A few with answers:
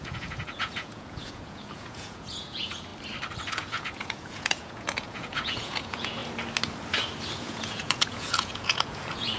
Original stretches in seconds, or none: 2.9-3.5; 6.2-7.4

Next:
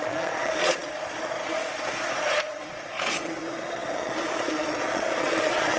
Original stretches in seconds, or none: none